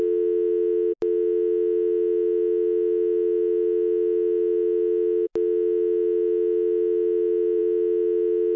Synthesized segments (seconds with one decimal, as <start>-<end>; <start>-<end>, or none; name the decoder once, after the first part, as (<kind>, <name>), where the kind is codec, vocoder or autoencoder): none